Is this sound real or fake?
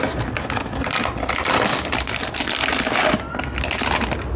real